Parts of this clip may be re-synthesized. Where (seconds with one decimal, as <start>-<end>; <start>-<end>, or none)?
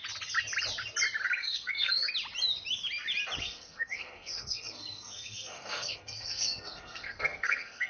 1.4-2.1; 3.4-7.9